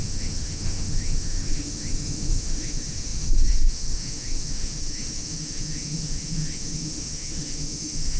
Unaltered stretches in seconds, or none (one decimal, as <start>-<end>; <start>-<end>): none